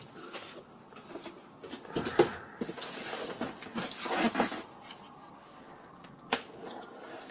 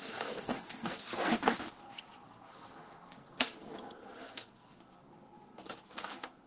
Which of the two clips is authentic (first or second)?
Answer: first